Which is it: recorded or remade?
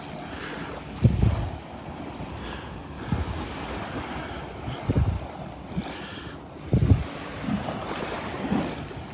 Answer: recorded